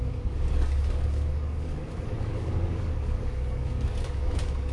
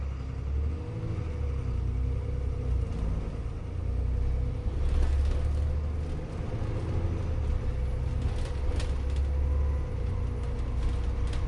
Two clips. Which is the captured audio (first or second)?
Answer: second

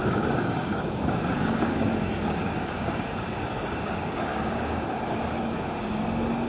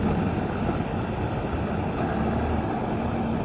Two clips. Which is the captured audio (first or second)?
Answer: second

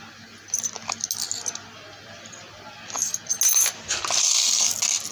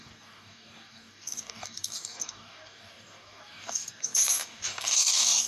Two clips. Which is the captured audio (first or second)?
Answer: first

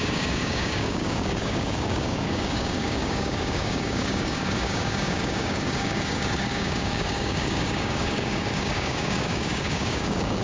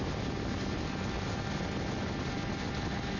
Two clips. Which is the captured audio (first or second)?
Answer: second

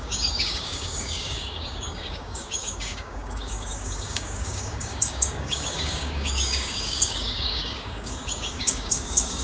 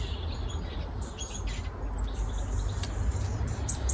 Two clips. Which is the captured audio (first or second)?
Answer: second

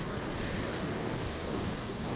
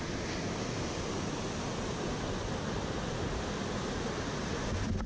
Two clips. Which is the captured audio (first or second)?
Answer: second